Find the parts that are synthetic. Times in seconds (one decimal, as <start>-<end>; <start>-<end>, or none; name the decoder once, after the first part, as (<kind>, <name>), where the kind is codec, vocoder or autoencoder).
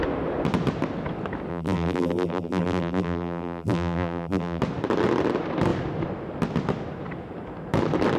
1.5-4.6 (vocoder, BigVGAN v2)